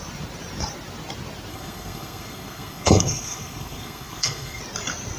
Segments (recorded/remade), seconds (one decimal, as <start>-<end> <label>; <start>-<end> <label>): 0.0-1.5 recorded; 1.5-4.6 remade; 4.6-5.2 recorded

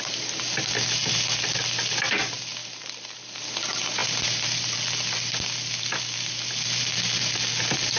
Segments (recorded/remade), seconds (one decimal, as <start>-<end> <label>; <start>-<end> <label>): 0.0-8.0 recorded

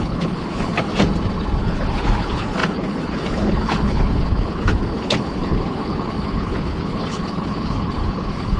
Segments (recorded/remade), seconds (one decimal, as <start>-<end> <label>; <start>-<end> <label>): 0.0-0.9 remade; 0.9-1.6 recorded; 1.6-8.6 remade

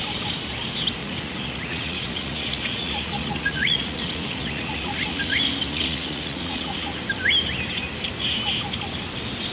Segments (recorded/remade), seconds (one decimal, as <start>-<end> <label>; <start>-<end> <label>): 0.0-1.0 recorded; 1.0-5.3 remade; 5.3-5.7 recorded; 5.7-7.0 remade; 7.0-9.5 recorded

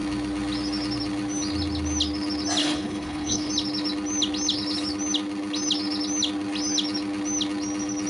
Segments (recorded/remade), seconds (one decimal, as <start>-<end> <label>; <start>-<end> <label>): 0.0-2.6 recorded; 2.6-3.5 remade; 3.5-8.1 recorded

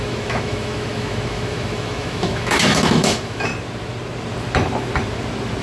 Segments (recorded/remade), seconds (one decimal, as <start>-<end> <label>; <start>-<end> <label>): 0.0-3.5 remade; 3.5-5.6 recorded

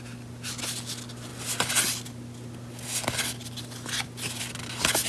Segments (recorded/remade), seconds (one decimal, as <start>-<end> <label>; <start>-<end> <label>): 0.0-5.1 recorded

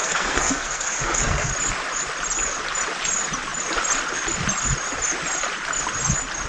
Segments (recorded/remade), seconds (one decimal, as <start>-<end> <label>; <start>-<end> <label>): 0.0-1.5 remade; 1.5-6.5 recorded